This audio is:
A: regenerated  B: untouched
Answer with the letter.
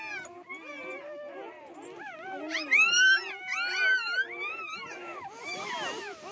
B